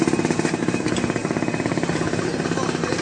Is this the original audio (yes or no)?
yes